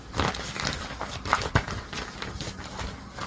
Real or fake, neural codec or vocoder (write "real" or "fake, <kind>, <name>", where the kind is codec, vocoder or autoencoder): real